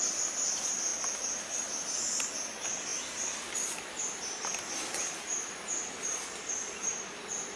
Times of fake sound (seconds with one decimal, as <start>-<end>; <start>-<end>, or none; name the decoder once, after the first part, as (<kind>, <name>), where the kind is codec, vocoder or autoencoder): none